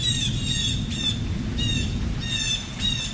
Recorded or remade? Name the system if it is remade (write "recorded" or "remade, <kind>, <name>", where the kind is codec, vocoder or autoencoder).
recorded